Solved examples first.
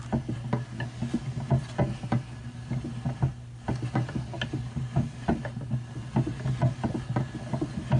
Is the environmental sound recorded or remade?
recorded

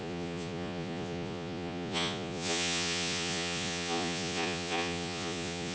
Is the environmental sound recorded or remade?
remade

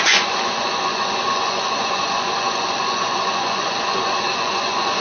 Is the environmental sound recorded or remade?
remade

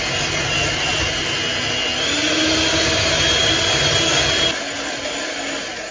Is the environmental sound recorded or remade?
recorded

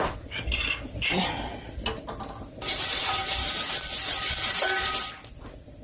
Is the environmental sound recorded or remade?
recorded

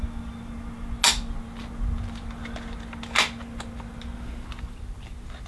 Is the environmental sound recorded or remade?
recorded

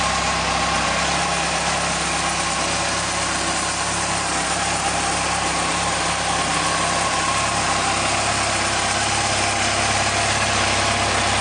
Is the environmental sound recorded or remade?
recorded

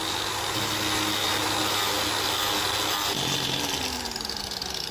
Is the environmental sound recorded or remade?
recorded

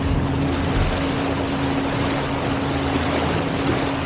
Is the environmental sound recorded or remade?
recorded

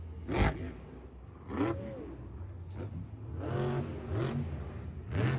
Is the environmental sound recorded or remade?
recorded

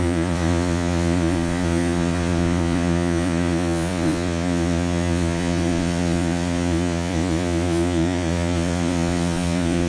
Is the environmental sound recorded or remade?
remade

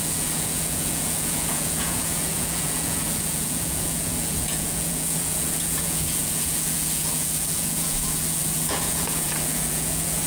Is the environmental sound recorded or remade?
remade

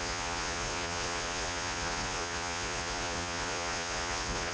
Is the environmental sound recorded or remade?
remade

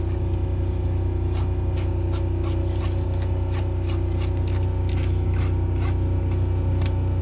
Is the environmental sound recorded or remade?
recorded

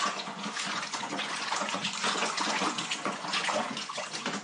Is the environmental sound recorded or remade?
remade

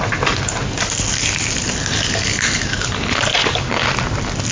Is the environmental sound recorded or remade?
recorded